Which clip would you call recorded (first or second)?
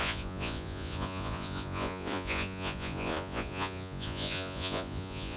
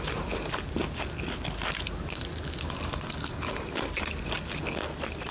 second